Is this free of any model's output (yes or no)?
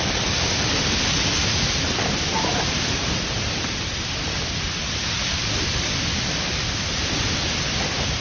yes